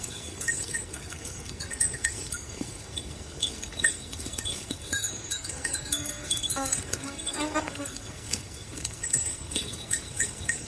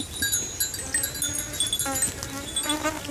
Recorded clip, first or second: second